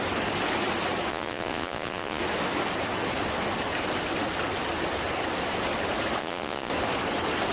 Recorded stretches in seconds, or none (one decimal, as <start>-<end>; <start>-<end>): 0.0-1.1; 2.2-6.2; 6.7-7.5